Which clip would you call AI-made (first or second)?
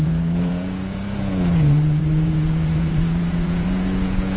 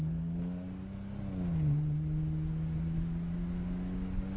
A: first